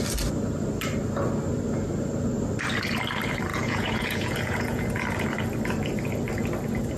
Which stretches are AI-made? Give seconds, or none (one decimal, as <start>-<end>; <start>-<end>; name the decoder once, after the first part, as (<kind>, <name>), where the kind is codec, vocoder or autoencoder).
3.5-5.0 (vocoder, Vocos)